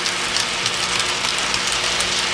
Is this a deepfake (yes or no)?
no